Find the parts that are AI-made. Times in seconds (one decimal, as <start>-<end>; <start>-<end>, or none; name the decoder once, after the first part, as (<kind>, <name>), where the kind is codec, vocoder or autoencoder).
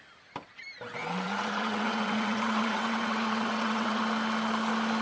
1.0-4.0 (vocoder, WaveNeXt)